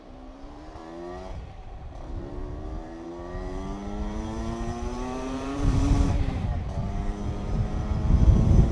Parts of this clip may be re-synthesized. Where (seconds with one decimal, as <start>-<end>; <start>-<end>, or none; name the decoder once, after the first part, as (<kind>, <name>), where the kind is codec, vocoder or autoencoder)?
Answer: 0.0-0.8 (vocoder, BigVGAN v2); 1.5-8.7